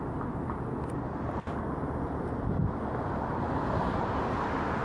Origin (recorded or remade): recorded